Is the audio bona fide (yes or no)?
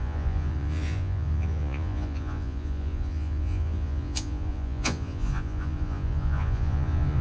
no